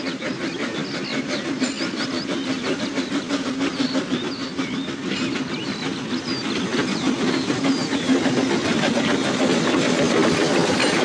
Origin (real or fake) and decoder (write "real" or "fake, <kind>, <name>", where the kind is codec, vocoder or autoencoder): real